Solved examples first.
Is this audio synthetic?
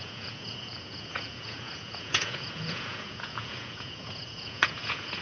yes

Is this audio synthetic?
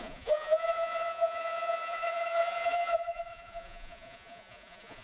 yes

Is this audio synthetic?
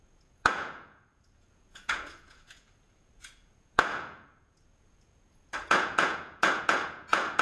yes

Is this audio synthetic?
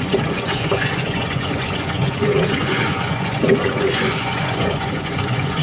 yes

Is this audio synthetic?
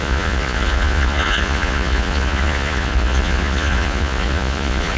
yes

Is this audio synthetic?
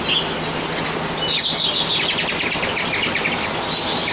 no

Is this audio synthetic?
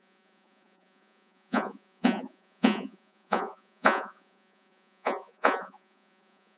yes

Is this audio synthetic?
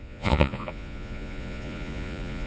yes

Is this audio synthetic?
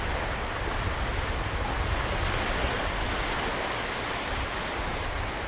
no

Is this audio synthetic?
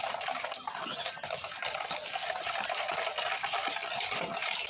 no